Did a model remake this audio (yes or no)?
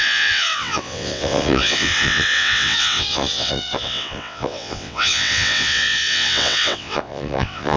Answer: yes